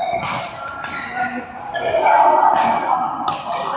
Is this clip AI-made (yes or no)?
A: no